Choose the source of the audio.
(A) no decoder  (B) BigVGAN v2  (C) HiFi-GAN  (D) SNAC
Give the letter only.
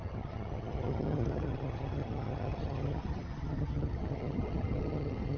C